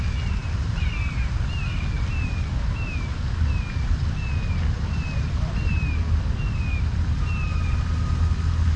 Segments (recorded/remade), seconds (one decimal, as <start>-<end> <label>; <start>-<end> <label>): 0.0-8.8 recorded

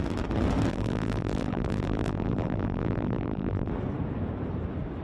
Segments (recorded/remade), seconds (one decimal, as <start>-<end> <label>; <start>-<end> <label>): 0.0-0.7 recorded; 0.7-3.7 remade; 3.7-5.0 recorded

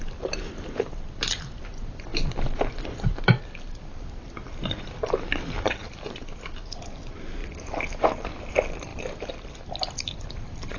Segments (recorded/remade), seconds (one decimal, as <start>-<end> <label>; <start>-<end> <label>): 0.0-10.8 remade